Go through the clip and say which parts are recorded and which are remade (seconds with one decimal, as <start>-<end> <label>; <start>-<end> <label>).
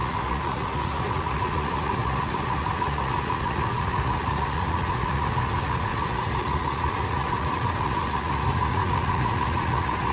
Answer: 0.0-10.1 remade